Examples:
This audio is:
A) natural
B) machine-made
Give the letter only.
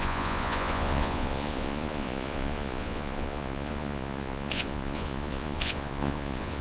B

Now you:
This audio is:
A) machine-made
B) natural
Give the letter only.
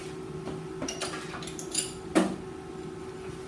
B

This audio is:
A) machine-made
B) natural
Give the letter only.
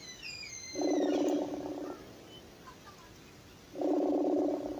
B